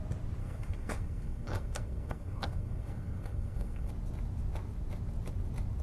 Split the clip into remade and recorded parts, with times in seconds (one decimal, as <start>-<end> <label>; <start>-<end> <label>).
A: 0.0-0.4 recorded; 0.4-3.9 remade; 3.9-5.8 recorded